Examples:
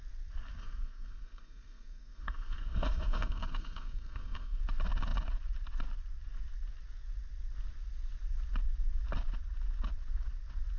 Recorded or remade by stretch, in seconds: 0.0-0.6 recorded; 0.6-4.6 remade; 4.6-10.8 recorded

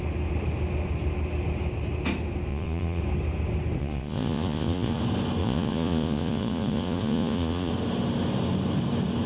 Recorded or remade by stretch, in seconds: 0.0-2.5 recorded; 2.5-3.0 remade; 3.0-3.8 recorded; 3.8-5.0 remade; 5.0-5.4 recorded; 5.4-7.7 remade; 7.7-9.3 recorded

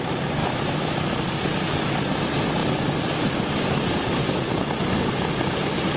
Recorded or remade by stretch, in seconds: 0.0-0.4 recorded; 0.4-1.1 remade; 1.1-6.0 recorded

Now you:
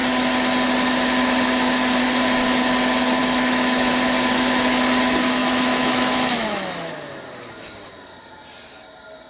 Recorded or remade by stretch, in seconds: 0.0-3.2 recorded; 3.2-3.9 remade; 3.9-5.4 recorded; 5.4-6.9 remade; 6.9-9.3 recorded

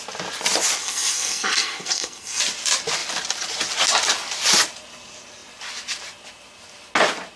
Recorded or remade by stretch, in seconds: 0.0-0.8 recorded; 0.8-2.4 remade; 2.4-7.4 recorded